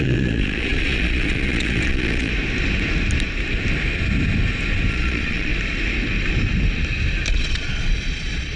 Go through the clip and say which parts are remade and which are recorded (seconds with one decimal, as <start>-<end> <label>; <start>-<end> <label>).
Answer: 0.0-2.3 remade; 2.3-4.9 recorded; 4.9-5.5 remade; 5.5-7.4 recorded; 7.4-8.6 remade